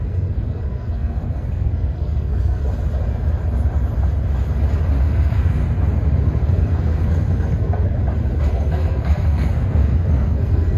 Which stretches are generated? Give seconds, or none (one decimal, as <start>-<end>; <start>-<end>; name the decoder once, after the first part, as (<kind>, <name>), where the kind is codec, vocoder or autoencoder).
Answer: 0.0-2.6 (codec, SNAC); 5.0-5.6; 6.5-8.0; 8.5-10.8